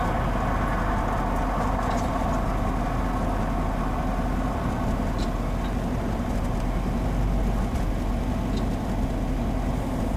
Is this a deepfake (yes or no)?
no